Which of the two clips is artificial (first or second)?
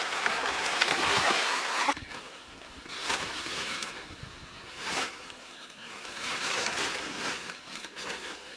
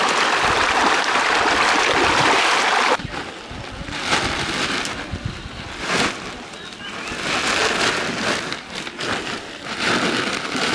first